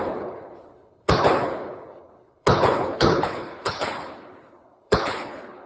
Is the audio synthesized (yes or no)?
yes